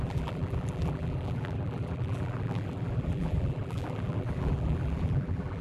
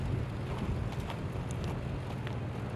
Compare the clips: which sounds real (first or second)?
second